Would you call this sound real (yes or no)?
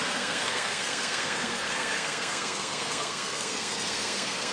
no